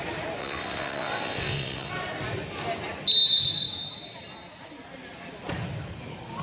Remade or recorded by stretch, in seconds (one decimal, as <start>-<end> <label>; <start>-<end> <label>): 0.0-0.4 recorded; 0.4-1.9 remade; 1.9-6.4 recorded